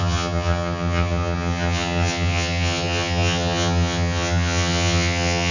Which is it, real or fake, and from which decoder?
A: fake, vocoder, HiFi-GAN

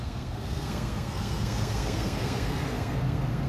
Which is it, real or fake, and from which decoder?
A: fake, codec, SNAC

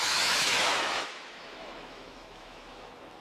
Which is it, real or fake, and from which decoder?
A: fake, autoencoder, DAC-VAE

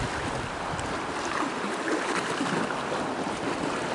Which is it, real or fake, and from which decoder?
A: real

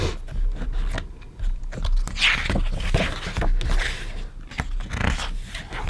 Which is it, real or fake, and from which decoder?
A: real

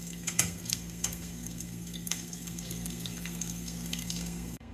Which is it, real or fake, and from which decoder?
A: fake, codec, SNAC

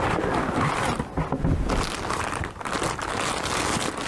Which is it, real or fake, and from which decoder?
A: real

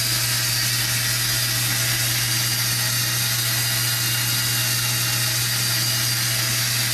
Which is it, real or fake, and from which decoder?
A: real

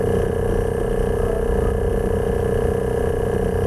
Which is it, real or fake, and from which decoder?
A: real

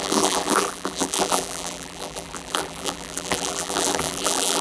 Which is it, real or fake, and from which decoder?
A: fake, vocoder, BigVGAN v2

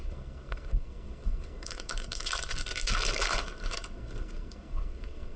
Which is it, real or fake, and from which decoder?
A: fake, codec, SNAC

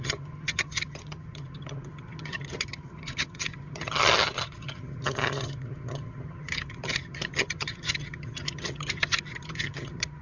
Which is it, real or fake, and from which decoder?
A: fake, vocoder, HiFi-GAN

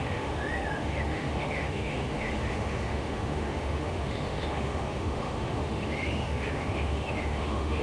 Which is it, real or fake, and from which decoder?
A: fake, autoencoder, DAC-VAE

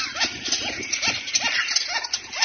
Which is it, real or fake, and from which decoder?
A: real